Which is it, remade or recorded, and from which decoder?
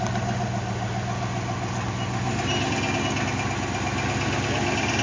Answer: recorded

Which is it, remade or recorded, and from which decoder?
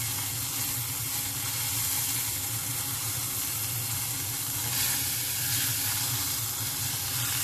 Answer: recorded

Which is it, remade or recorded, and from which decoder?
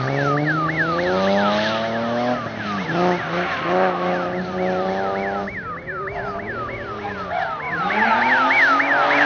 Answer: recorded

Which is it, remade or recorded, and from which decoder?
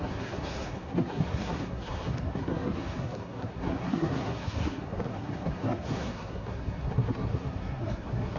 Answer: remade, codec, SNAC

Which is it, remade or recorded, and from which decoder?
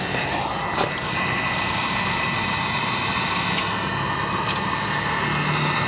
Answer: recorded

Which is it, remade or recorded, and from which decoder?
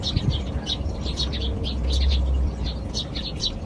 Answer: recorded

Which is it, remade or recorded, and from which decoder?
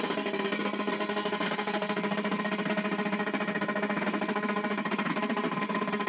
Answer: remade, codec, SNAC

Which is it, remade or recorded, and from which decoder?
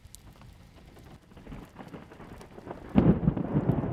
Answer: recorded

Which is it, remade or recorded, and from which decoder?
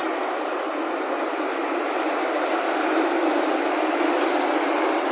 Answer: recorded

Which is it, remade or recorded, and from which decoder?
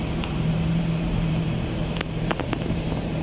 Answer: remade, vocoder, BigVGAN v2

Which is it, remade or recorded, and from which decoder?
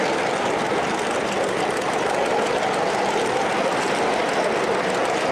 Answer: recorded